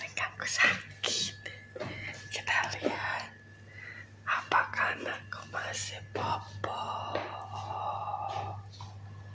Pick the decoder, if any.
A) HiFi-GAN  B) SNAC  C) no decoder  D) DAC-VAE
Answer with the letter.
C